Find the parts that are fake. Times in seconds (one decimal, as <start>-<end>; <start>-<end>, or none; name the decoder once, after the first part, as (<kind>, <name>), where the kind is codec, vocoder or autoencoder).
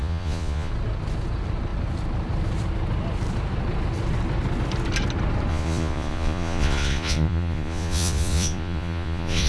0.0-0.7 (vocoder, Vocos); 5.5-9.5